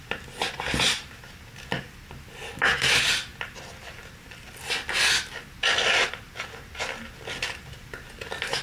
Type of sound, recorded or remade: recorded